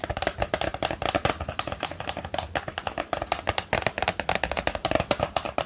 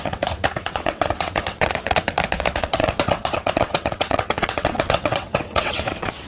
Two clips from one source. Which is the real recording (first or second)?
first